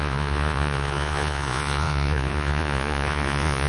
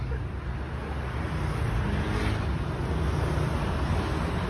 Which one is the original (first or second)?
second